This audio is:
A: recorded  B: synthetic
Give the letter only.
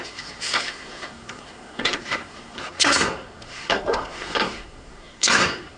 B